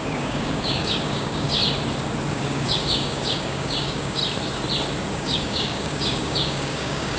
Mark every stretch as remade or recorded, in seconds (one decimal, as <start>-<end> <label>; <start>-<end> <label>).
0.0-1.6 remade; 1.6-2.3 recorded; 2.3-4.2 remade; 4.2-5.1 recorded; 5.1-7.2 remade